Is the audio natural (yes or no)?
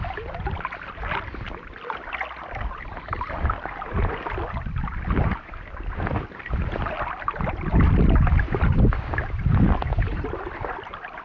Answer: yes